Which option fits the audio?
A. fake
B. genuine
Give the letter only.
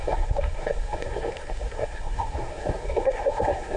A